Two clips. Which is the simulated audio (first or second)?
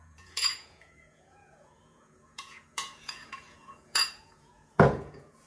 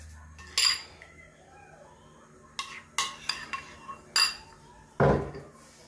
first